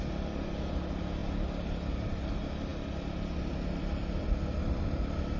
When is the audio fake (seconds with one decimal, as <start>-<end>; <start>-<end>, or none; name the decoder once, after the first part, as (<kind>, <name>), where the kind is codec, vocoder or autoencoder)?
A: none

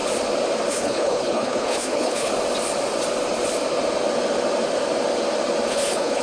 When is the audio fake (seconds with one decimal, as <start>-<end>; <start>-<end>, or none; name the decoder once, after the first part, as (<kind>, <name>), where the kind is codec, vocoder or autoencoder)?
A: 0.7-2.3 (codec, HILCodec); 5.7-6.2

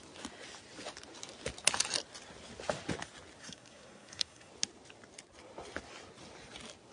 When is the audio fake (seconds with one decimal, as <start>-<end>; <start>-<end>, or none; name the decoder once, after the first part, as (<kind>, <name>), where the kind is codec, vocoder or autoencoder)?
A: 3.4-4.5 (codec, SNAC)

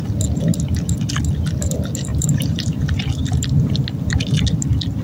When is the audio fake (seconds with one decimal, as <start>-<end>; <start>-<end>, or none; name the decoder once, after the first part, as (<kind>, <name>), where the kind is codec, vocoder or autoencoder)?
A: 2.1-3.7 (vocoder, BigVGAN v2)

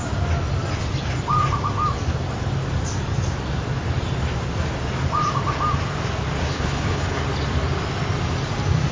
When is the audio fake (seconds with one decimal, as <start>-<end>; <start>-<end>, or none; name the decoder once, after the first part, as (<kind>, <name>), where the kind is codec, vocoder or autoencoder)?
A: 6.4-7.2 (codec, HILCodec)

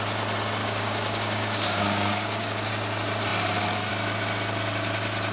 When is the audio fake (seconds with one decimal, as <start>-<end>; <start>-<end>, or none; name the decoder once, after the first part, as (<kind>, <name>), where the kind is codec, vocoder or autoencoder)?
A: 0.6-2.7 (codec, DAC)